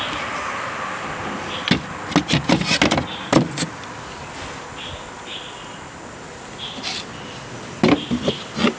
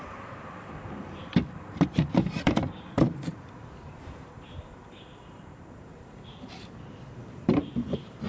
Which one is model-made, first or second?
second